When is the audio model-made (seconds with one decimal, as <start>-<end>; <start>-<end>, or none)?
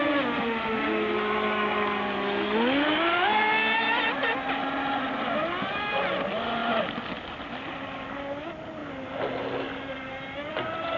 none